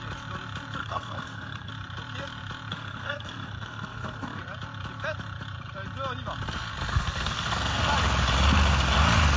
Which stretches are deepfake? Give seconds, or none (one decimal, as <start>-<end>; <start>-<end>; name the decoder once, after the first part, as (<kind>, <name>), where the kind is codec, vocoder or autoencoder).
0.8-1.7 (codec, SNAC); 2.7-4.4; 6.9-7.8